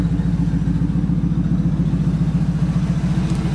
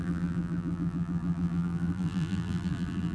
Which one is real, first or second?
first